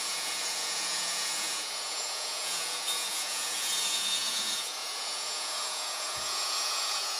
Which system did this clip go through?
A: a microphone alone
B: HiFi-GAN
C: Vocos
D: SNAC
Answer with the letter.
C